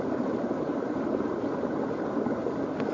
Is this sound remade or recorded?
recorded